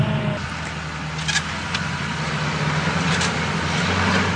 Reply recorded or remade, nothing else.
recorded